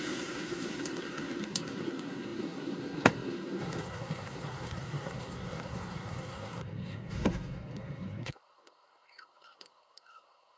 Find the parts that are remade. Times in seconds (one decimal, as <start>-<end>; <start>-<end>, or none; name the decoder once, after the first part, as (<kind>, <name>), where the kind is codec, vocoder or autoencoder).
0.0-10.6 (codec, SNAC)